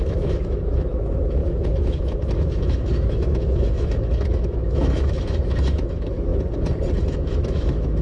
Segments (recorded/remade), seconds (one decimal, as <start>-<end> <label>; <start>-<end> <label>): 0.0-6.3 remade; 6.3-7.0 recorded; 7.0-8.0 remade